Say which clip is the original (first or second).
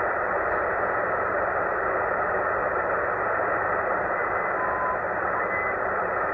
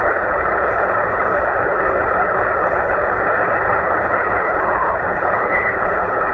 first